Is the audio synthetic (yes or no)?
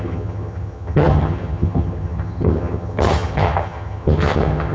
yes